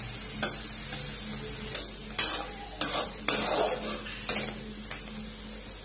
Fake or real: real